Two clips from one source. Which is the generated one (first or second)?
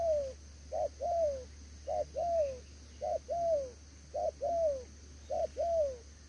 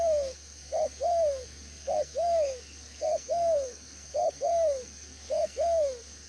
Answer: second